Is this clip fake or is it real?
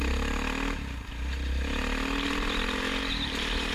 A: real